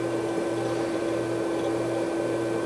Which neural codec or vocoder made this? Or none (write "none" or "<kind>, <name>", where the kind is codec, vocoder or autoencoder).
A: vocoder, BigVGAN v2